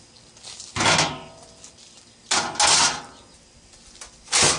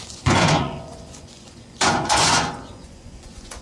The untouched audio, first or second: first